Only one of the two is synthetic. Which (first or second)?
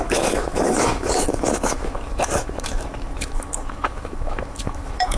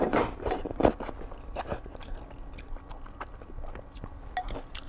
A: first